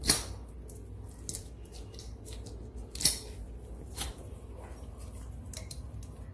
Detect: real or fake real